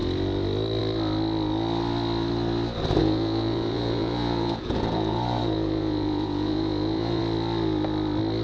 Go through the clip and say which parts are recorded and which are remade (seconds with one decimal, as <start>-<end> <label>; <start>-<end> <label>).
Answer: 0.0-3.0 recorded; 3.0-7.2 remade; 7.2-8.4 recorded